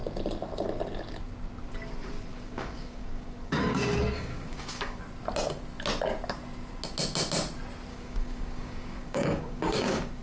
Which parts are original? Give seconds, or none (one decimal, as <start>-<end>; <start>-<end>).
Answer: 0.0-2.3; 5.0-7.9